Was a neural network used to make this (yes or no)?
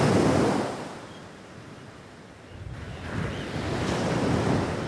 no